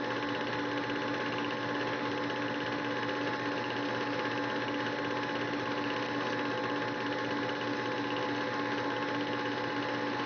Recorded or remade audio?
recorded